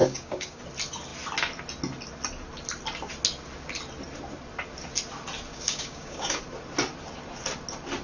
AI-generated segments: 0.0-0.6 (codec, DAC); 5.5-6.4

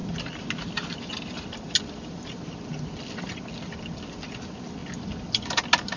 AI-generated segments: none

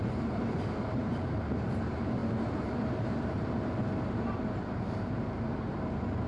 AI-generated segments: 0.0-6.3 (vocoder, BigVGAN v2)

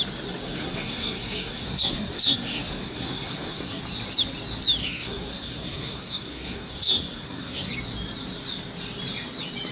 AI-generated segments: 0.4-3.8 (codec, SNAC); 4.8-7.7

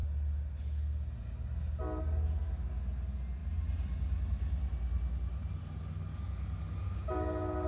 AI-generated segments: none

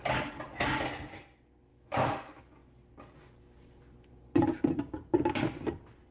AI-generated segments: 1.7-2.4 (autoencoder, DAC-VAE)